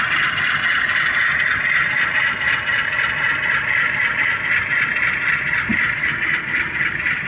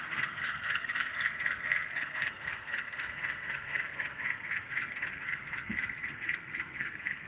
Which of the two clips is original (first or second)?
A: first